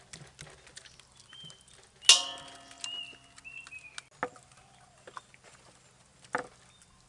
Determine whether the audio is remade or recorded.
recorded